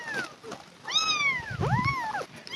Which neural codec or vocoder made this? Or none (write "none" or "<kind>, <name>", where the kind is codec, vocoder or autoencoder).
none